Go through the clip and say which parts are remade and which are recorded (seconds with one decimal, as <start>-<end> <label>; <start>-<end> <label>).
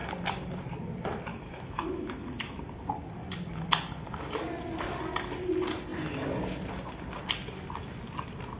0.0-1.3 recorded; 1.3-2.6 remade; 2.6-8.6 recorded